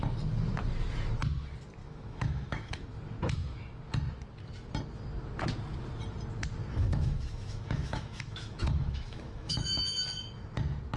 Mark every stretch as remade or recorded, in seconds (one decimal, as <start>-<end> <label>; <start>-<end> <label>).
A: 0.0-1.8 recorded; 1.8-2.9 remade; 2.9-6.8 recorded; 6.8-10.0 remade; 10.0-11.0 recorded